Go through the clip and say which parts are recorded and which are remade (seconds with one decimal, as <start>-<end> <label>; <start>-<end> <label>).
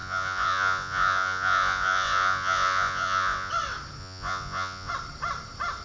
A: 0.0-3.5 remade; 3.5-4.0 recorded; 4.0-4.9 remade; 4.9-5.8 recorded